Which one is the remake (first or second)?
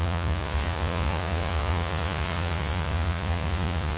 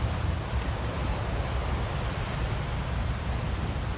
first